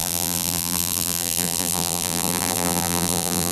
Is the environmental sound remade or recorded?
remade